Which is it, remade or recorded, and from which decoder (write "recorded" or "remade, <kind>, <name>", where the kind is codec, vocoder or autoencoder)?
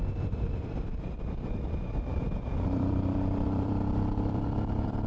remade, vocoder, BigVGAN v2